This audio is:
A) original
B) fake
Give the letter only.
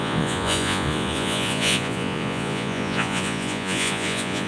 B